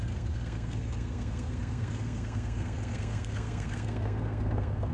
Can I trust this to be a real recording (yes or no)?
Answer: no